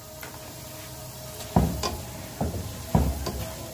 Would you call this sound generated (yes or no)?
no